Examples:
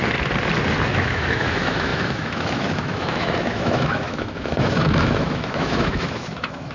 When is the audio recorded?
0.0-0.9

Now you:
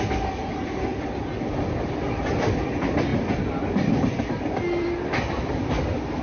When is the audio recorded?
none